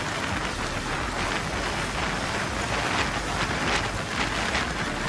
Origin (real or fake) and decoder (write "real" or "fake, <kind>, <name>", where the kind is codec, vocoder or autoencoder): real